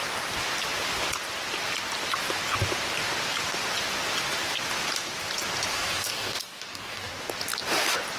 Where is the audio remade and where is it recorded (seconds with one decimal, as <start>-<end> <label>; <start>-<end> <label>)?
0.0-5.7 recorded; 5.7-7.1 remade; 7.1-8.2 recorded